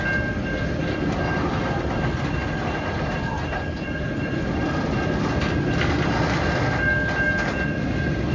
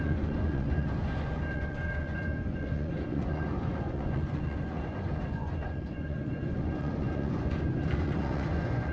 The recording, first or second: first